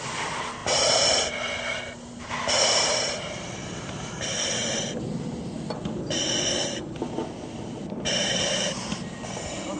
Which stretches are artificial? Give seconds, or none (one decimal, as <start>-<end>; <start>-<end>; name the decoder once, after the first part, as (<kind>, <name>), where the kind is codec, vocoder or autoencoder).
none